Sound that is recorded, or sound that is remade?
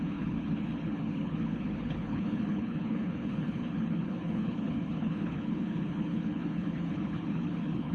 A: remade